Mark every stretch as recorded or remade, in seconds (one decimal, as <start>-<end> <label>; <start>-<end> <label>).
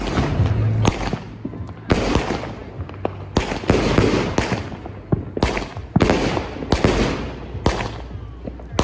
0.0-8.8 recorded